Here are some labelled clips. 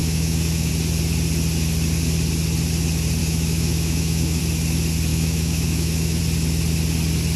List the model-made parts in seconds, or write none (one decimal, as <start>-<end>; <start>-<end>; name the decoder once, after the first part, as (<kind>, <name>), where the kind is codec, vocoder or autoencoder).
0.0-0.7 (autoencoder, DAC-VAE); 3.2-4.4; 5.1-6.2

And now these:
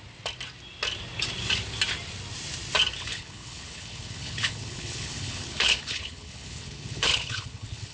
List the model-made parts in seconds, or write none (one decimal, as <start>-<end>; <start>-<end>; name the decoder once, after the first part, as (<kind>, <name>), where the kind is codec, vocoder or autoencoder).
3.0-7.9 (codec, HILCodec)

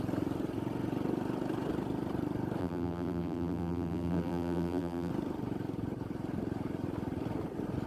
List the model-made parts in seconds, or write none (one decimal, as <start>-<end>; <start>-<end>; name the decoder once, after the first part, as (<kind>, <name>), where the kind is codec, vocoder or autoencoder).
2.6-5.1 (vocoder, BigVGAN v2)

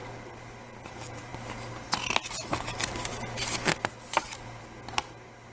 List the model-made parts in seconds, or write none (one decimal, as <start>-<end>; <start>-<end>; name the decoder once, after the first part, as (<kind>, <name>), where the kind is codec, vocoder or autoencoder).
none

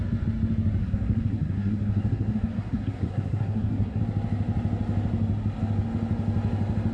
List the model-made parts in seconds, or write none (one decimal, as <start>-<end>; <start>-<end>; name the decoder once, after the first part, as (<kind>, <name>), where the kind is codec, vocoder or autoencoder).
0.8-4.0 (codec, SNAC)

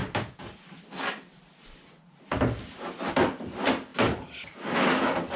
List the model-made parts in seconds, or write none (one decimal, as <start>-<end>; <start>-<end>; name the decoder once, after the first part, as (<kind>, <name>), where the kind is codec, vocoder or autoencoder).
0.0-3.1 (vocoder, BigVGAN v2); 3.9-4.8

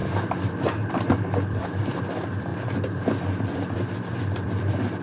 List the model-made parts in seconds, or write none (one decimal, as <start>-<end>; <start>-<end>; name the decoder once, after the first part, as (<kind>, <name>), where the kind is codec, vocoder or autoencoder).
0.0-5.0 (vocoder, BigVGAN v2)

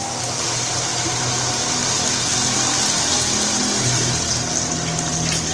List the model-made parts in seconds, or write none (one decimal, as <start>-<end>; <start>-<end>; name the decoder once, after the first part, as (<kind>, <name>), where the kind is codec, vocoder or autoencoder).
none